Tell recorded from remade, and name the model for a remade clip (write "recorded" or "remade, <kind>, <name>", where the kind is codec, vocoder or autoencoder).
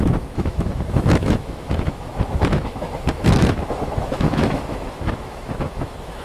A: remade, autoencoder, DAC-VAE